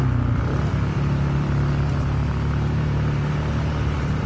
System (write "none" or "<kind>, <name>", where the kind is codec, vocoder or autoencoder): vocoder, BigVGAN v2